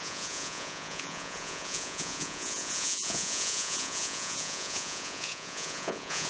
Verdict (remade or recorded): remade